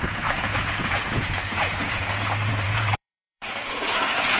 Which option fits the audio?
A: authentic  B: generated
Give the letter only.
B